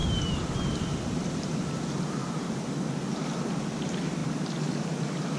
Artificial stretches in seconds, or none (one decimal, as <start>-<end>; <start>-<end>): 0.0-1.8; 4.2-4.7